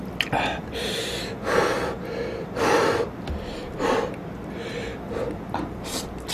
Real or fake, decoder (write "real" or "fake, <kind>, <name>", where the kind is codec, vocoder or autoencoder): fake, vocoder, BigVGAN v2